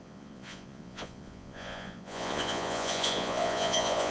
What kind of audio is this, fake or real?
fake